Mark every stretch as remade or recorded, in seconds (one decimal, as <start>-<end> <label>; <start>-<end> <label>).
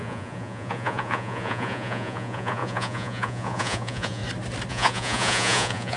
0.0-4.2 remade; 4.2-4.7 recorded; 4.7-6.0 remade